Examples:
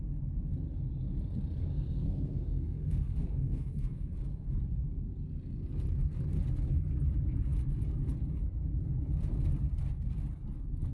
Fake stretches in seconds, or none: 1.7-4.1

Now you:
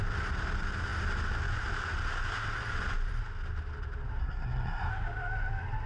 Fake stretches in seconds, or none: 4.2-4.9

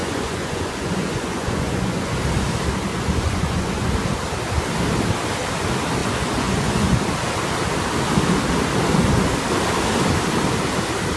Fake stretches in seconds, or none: 0.0-2.2; 2.9-3.9; 6.0-7.0

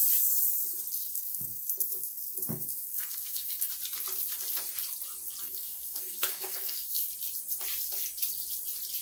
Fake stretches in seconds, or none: 1.0-3.7; 5.4-7.1